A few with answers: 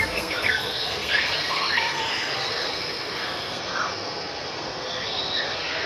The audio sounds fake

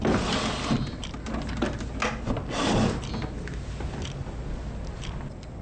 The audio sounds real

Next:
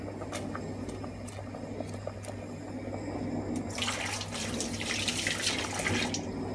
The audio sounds real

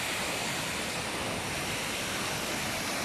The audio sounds real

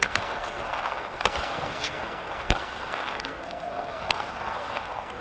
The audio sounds fake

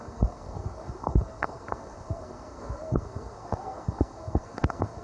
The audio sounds fake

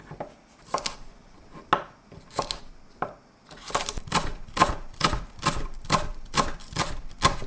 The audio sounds real